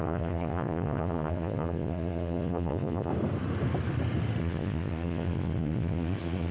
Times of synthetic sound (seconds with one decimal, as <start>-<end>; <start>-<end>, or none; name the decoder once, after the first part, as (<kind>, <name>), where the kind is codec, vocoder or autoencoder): 0.0-3.1 (vocoder, Vocos); 4.4-6.5